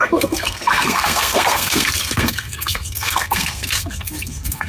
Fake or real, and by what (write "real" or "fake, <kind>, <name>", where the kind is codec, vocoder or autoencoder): fake, codec, SNAC